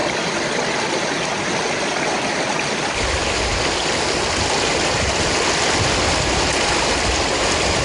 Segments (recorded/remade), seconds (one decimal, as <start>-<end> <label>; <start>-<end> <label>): 0.0-7.8 recorded